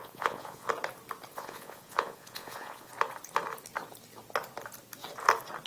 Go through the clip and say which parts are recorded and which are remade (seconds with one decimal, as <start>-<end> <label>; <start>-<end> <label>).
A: 0.0-0.7 remade; 0.7-1.3 recorded; 1.3-2.9 remade; 2.9-5.7 recorded